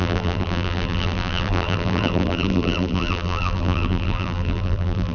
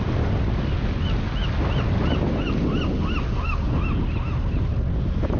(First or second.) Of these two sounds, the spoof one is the first